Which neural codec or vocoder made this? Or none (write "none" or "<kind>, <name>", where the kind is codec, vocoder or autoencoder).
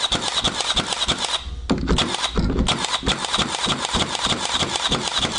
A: none